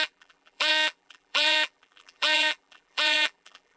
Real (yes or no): no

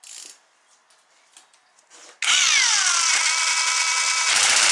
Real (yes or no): yes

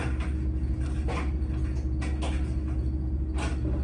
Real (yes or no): yes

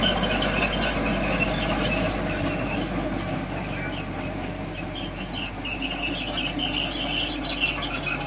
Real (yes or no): yes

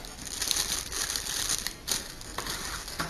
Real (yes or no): yes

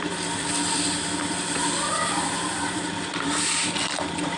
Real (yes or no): no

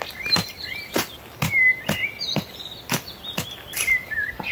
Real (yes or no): no